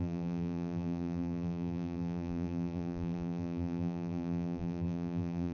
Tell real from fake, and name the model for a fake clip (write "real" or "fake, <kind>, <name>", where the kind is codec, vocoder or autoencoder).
fake, vocoder, BigVGAN v2